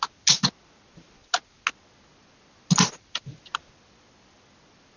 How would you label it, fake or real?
real